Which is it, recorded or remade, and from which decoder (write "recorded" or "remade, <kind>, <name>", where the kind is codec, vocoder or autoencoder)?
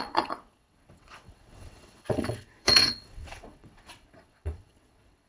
remade, vocoder, WaveNeXt